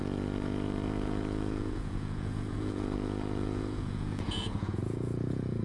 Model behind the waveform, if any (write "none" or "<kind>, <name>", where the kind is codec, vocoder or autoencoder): vocoder, Vocos